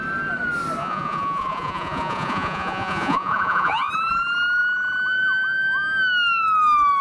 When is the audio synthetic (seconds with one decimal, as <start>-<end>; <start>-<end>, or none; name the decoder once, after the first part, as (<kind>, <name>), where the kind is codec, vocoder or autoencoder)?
0.8-3.9 (vocoder, Vocos)